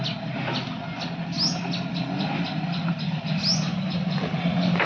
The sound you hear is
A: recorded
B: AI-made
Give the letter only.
A